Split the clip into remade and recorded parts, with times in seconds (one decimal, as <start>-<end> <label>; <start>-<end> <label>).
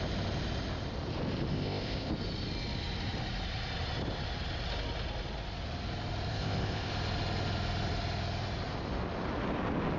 0.0-1.5 recorded; 1.5-2.1 remade; 2.1-6.3 recorded; 6.3-6.9 remade; 6.9-10.0 recorded